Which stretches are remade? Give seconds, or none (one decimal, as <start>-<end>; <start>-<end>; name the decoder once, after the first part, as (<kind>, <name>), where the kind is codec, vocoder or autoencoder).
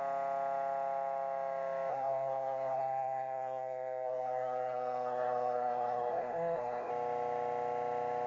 1.9-6.9 (codec, SNAC)